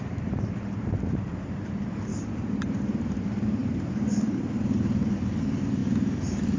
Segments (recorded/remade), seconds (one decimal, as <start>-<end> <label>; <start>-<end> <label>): 0.0-6.6 remade